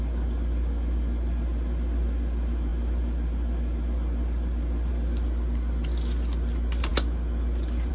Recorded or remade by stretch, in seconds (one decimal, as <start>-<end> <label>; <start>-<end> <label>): 0.0-7.9 recorded